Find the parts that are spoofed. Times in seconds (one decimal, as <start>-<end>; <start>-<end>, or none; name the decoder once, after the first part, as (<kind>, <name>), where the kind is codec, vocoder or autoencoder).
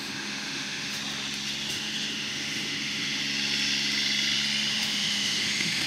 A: 0.0-1.0 (autoencoder, DAC-VAE); 1.7-3.2; 4.7-5.9